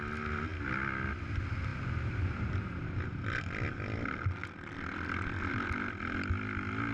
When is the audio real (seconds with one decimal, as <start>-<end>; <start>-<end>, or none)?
0.0-6.9

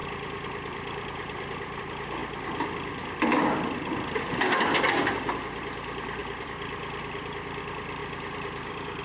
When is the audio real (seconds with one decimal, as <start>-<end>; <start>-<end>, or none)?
1.8-6.2; 7.6-8.0